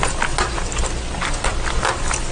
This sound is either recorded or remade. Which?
recorded